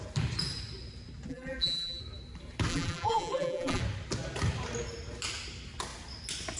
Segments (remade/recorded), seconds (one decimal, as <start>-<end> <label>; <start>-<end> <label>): 0.0-1.3 recorded; 1.3-2.0 remade; 2.0-2.7 recorded; 2.7-3.8 remade; 3.8-6.6 recorded